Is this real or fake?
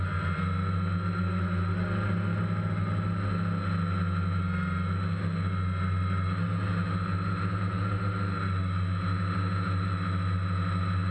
real